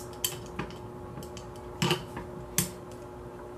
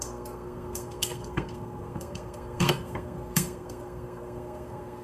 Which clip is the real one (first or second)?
first